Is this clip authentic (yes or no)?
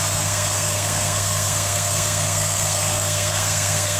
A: no